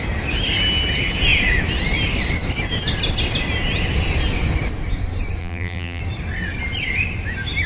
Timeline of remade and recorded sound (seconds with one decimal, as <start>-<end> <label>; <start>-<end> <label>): 0.0-5.4 recorded; 5.4-6.0 remade; 6.0-7.7 recorded